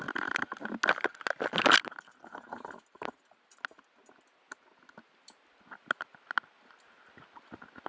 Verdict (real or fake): real